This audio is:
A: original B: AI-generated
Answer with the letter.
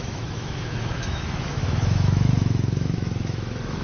B